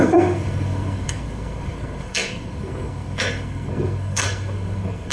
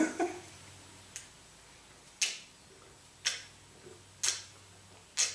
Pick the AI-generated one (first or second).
first